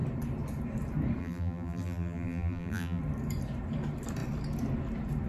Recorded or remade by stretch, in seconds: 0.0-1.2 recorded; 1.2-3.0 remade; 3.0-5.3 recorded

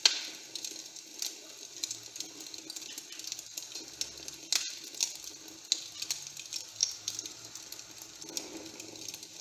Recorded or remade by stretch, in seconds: 0.0-6.8 recorded; 6.8-7.6 remade; 7.6-9.4 recorded